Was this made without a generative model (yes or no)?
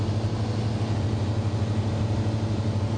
yes